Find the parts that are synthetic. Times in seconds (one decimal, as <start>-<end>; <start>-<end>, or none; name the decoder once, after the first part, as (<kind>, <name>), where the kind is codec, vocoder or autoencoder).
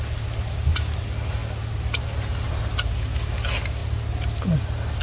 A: none